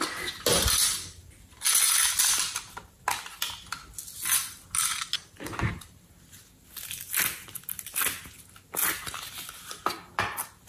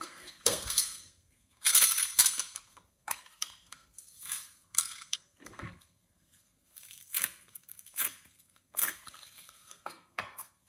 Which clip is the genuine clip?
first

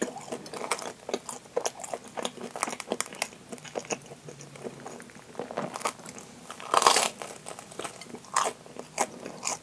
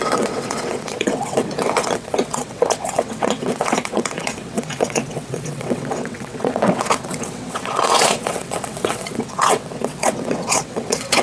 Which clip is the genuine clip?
first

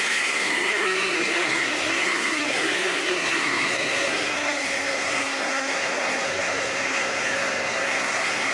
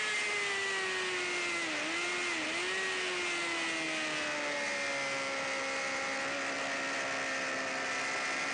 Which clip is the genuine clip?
second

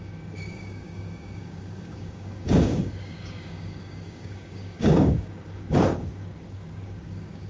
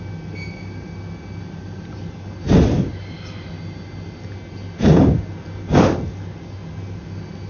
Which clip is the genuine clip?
second